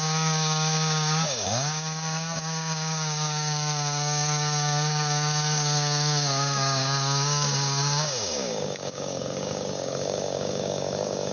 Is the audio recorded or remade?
remade